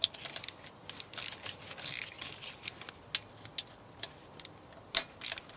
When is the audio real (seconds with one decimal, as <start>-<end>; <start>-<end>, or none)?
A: 0.0-5.6